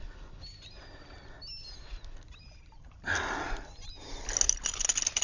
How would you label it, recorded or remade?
recorded